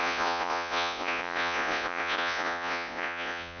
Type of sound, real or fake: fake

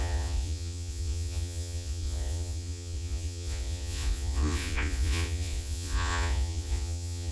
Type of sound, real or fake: fake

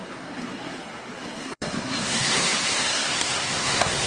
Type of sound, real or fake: fake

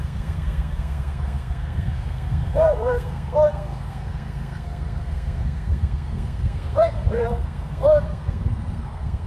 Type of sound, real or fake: fake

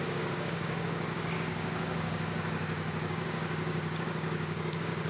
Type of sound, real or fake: fake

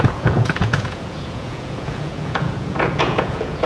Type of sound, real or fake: fake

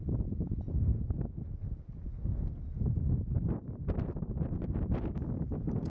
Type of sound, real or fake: real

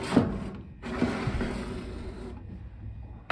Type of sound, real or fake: real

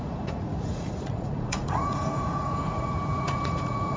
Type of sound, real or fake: fake